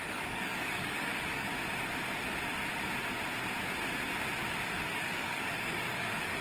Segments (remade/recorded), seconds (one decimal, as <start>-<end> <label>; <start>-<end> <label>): 0.0-1.5 remade; 1.5-4.7 recorded; 4.7-6.4 remade